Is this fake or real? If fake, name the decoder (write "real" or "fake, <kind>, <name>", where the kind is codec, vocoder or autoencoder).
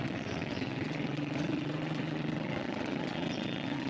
fake, vocoder, WaveNeXt